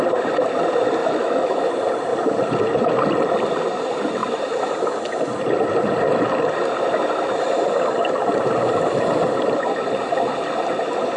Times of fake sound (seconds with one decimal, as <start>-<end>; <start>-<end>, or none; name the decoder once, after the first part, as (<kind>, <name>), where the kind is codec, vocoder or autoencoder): 1.0-1.7 (autoencoder, DAC-VAE)